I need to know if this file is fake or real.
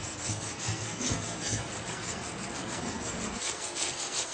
fake